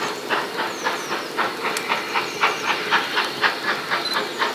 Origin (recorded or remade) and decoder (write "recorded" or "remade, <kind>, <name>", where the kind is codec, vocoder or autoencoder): recorded